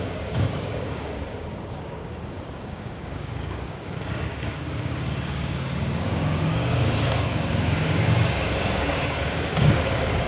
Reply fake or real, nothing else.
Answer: fake